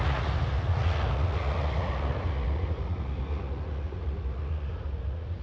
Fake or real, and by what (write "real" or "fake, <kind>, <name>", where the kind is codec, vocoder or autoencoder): fake, vocoder, Vocos